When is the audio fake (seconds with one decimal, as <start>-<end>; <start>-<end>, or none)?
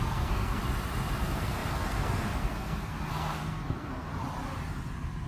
0.0-0.6; 1.2-4.1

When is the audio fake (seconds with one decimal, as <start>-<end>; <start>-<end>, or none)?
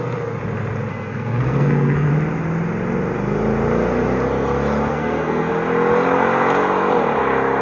0.9-2.1; 4.9-5.5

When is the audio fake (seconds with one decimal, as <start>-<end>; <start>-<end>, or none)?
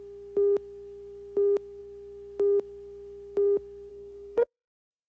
3.9-5.1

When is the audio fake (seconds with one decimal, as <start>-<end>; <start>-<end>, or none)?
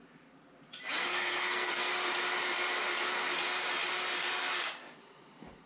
1.0-1.9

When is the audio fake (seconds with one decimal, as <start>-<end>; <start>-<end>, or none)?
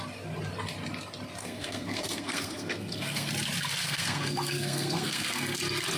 1.4-3.3; 3.8-5.6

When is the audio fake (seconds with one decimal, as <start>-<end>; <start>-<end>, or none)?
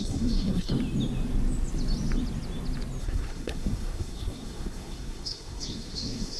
0.0-0.7; 3.0-6.4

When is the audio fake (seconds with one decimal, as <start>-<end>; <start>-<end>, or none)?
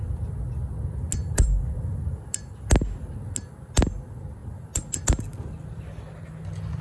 none